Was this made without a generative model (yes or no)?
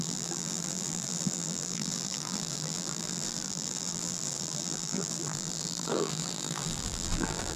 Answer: no